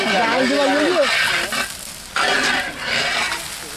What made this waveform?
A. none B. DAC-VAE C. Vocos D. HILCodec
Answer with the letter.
A